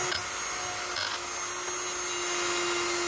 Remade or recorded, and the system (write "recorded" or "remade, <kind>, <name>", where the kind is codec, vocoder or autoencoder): recorded